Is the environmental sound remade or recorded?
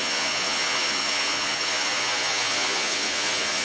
remade